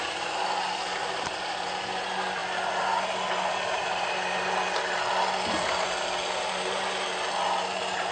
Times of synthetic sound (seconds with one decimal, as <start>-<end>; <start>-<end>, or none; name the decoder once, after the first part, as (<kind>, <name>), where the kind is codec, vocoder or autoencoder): none